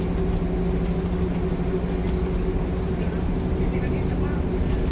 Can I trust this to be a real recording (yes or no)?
yes